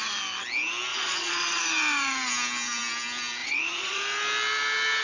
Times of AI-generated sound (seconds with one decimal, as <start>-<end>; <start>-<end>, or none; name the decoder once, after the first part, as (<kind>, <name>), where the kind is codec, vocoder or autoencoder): 0.9-1.6 (vocoder, Vocos); 3.4-4.0